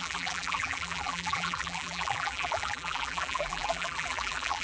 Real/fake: fake